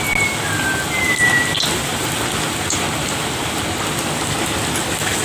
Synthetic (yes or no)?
no